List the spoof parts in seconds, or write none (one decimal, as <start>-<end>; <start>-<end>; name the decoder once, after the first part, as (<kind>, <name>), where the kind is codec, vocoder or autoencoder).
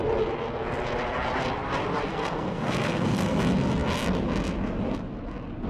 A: 2.1-3.4 (codec, SNAC)